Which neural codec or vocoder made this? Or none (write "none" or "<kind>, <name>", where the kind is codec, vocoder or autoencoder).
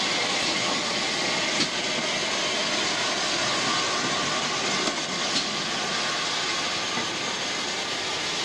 none